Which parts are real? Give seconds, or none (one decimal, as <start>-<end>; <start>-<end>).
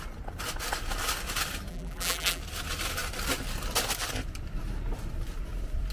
0.0-1.7; 2.4-5.9